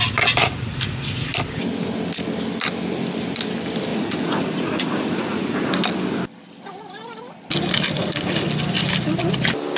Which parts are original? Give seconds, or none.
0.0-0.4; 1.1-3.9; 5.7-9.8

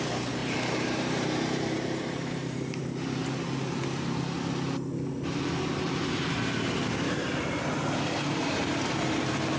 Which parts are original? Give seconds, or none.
0.0-0.4; 2.9-9.6

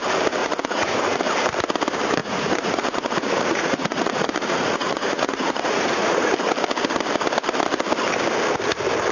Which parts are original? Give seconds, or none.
0.0-0.4; 1.2-2.2; 6.3-9.1

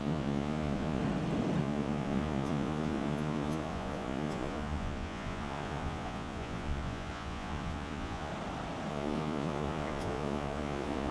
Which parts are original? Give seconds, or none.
1.0-1.6; 8.3-8.9

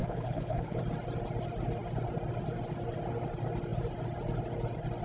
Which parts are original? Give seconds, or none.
0.8-5.0

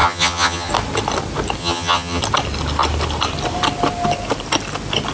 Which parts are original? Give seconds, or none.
0.7-1.6; 2.2-5.1